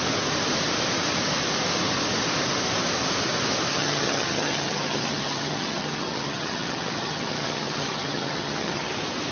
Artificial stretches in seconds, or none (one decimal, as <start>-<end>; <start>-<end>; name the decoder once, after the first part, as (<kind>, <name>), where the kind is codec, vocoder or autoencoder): 3.7-8.9 (vocoder, HiFi-GAN)